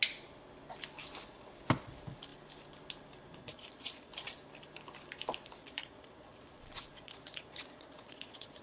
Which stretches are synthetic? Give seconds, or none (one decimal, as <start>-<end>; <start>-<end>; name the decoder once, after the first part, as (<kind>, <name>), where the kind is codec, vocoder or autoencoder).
3.4-4.1 (vocoder, Vocos); 5.6-8.6